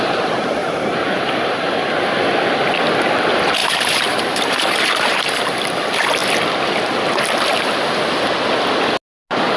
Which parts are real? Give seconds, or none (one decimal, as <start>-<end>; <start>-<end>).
0.0-0.6; 1.9-3.6; 5.2-9.6